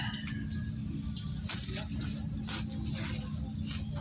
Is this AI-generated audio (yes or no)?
no